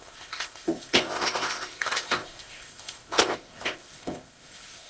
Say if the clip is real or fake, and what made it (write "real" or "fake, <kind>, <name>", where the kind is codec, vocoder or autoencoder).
fake, codec, ZipCodec